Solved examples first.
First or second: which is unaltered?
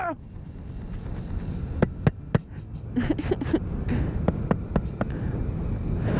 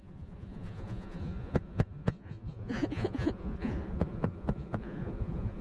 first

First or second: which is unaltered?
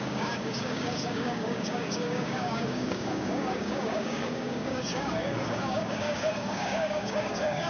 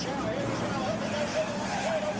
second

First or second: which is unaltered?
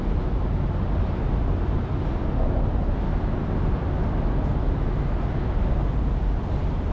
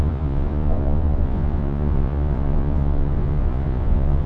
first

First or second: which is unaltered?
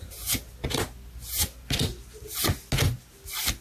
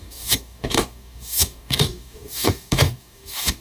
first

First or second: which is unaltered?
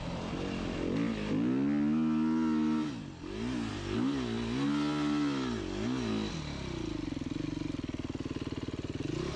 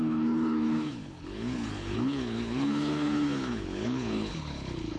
first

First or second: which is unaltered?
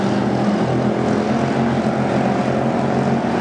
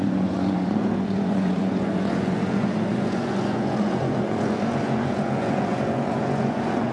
first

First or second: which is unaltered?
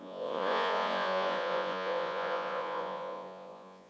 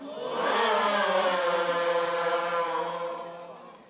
second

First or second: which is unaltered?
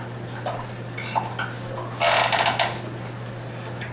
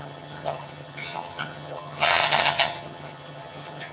first